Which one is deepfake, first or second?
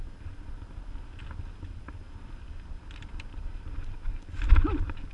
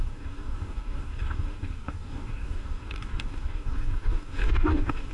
second